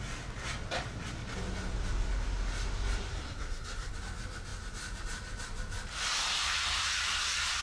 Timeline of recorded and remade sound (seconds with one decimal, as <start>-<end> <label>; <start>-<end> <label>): 0.0-3.1 recorded; 3.1-3.9 remade; 3.9-7.6 recorded